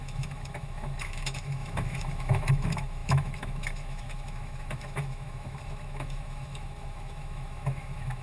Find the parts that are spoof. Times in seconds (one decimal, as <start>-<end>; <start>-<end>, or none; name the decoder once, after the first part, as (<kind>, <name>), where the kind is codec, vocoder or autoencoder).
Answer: 0.0-8.2 (autoencoder, DAC-VAE)